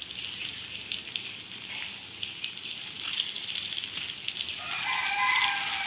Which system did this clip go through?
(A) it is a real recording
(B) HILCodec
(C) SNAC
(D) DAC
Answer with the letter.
A